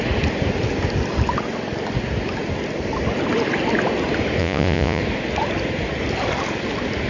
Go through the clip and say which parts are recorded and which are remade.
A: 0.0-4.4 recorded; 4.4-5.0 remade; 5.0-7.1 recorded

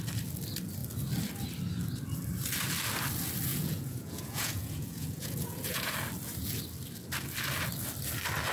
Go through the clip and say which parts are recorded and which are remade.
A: 0.0-3.5 recorded; 3.5-5.9 remade; 5.9-8.5 recorded

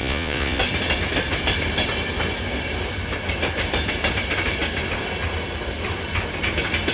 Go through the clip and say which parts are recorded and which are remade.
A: 0.0-0.6 remade; 0.6-6.9 recorded

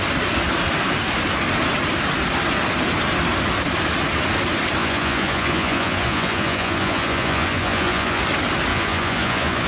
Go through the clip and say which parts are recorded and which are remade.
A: 0.0-4.8 recorded; 4.8-8.2 remade; 8.2-8.7 recorded; 8.7-9.7 remade

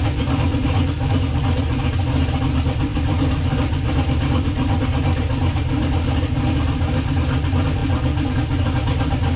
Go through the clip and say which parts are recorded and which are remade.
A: 0.0-9.4 recorded

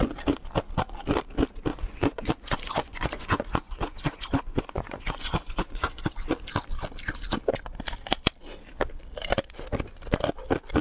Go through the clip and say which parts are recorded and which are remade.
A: 0.0-1.7 recorded; 1.7-6.0 remade; 6.0-10.8 recorded

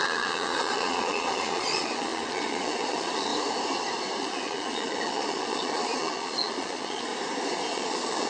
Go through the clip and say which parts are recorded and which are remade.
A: 0.0-3.3 remade; 3.3-4.2 recorded; 4.2-7.1 remade; 7.1-7.7 recorded; 7.7-8.3 remade